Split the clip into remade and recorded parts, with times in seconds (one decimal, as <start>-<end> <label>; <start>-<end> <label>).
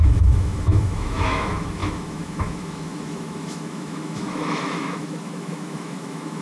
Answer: 0.0-6.4 remade